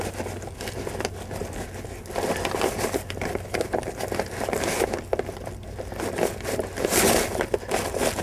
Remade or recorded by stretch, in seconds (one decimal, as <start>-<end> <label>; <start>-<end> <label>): 0.0-8.2 recorded